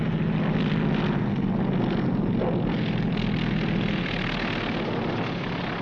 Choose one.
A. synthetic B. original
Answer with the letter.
B